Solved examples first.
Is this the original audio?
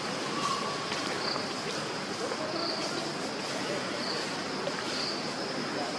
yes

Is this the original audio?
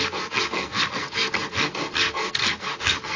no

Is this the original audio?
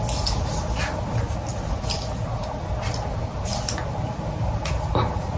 yes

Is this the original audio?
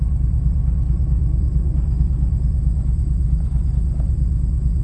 yes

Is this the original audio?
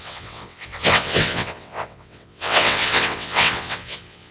no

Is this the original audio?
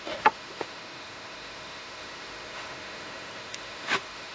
no